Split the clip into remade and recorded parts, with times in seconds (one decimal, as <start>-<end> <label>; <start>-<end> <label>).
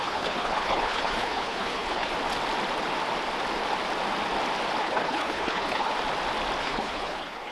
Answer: 0.0-2.1 remade; 2.1-4.8 recorded; 4.8-5.9 remade; 5.9-6.6 recorded; 6.6-7.5 remade